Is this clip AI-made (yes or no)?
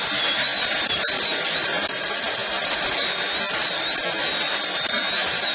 no